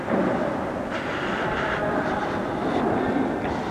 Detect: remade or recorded recorded